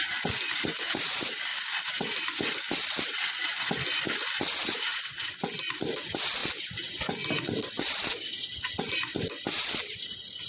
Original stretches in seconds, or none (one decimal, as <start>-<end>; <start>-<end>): 0.0-10.5